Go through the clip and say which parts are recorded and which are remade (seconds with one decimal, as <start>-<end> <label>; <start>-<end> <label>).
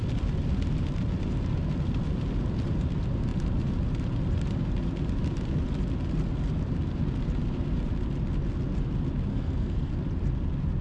0.0-9.3 recorded; 9.3-9.9 remade; 9.9-10.8 recorded